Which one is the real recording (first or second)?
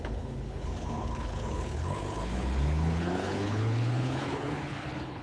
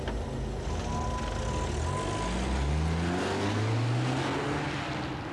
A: second